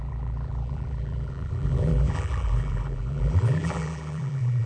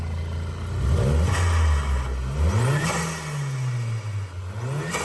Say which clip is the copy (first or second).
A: first